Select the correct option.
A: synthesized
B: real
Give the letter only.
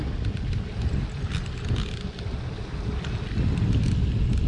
B